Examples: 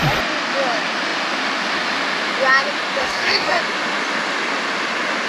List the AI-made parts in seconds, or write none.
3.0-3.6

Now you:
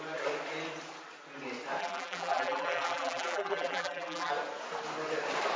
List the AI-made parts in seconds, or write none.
1.8-4.3

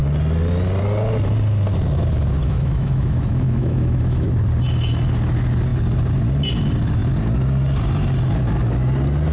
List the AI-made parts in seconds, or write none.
2.4-4.3

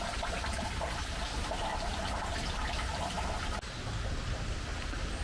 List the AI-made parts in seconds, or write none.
none

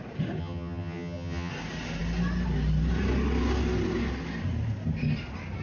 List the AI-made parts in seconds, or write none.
0.4-1.5

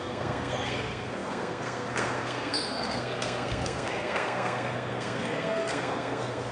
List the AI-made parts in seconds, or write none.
0.0-6.5

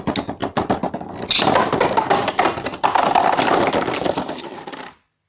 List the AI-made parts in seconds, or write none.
none